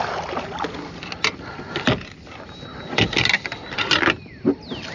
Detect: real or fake real